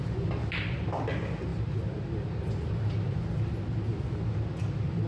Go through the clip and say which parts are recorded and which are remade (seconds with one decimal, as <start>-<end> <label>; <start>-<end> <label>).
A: 0.0-5.1 recorded